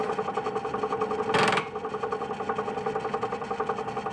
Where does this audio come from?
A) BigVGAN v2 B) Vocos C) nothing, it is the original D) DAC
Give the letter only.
C